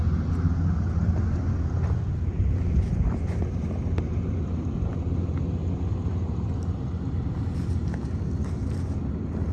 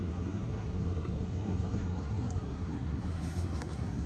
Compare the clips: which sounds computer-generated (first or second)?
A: second